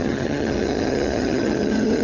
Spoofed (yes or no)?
yes